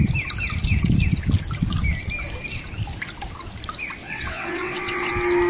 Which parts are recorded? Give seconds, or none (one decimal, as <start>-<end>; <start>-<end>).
0.0-4.0; 5.1-5.5